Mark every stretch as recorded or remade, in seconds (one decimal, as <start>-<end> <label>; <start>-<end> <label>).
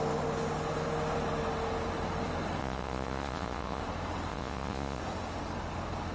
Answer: 0.0-2.6 recorded; 2.6-3.8 remade; 3.8-4.3 recorded; 4.3-5.0 remade; 5.0-6.1 recorded